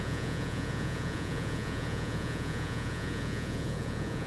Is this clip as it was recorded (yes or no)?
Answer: no